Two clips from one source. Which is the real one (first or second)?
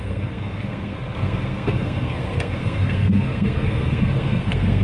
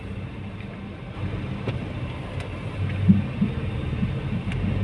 second